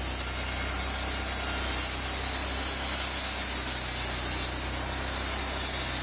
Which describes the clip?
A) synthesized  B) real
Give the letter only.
B